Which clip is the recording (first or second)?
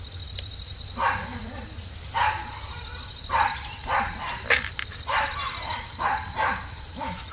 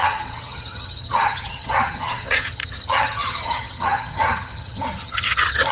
first